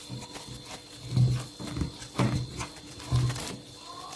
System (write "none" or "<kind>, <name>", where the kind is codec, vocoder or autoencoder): none